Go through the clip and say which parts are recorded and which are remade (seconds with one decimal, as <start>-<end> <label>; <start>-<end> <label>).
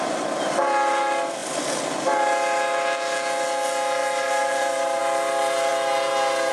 0.0-4.0 recorded; 4.0-5.0 remade; 5.0-6.5 recorded